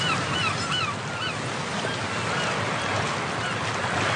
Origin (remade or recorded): recorded